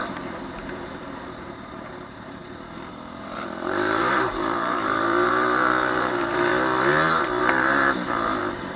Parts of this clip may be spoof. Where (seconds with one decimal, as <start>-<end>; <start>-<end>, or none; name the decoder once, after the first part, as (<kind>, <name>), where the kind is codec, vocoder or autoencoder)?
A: 0.0-2.4 (vocoder, BigVGAN v2); 2.9-6.5; 7.4-8.8